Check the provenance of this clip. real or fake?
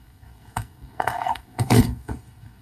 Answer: fake